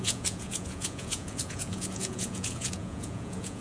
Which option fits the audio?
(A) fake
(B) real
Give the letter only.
A